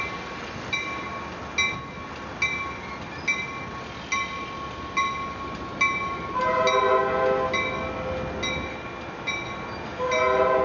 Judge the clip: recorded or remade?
recorded